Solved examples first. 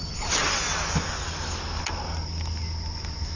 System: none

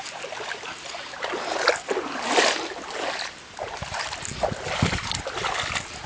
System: none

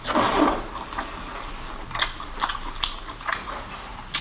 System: none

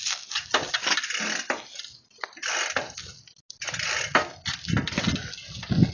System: none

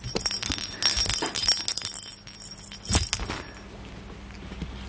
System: none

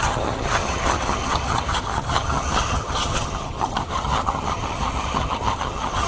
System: vocoder, HiFi-GAN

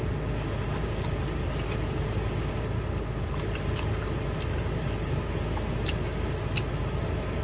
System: none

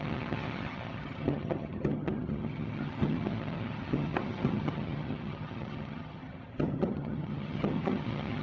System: vocoder, HiFi-GAN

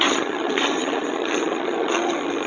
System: vocoder, HiFi-GAN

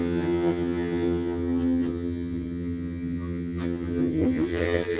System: vocoder, HiFi-GAN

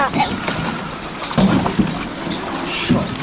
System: none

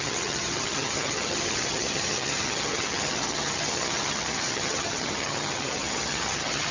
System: vocoder, HiFi-GAN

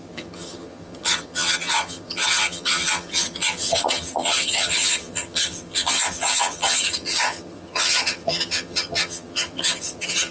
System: vocoder, HiFi-GAN